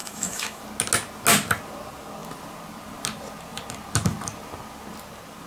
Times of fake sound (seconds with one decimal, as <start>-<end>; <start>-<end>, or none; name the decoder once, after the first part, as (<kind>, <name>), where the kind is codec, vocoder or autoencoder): 0.0-0.6 (autoencoder, DAC-VAE)